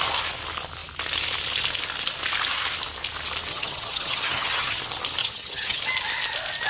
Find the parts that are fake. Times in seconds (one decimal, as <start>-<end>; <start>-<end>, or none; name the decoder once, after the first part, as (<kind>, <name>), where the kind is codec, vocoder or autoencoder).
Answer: 3.5-4.8 (vocoder, HiFi-GAN); 5.2-5.8